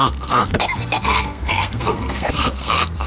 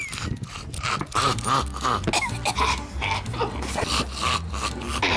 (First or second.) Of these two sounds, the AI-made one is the first